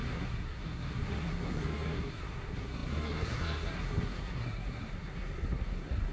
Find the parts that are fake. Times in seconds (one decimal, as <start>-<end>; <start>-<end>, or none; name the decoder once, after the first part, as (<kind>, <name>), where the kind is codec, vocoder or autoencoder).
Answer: 0.0-6.1 (codec, SNAC)